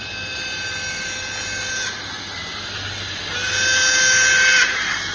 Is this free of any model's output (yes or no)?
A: yes